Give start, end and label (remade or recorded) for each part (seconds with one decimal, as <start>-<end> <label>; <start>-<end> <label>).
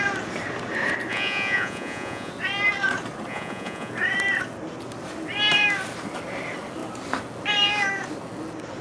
0.0-1.1 recorded; 1.1-2.3 remade; 2.3-3.3 recorded; 3.3-3.9 remade; 3.9-8.8 recorded